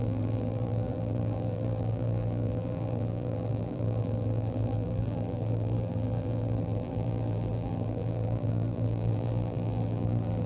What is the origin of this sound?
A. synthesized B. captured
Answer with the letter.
A